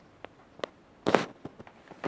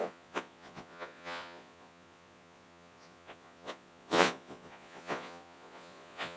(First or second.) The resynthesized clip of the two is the second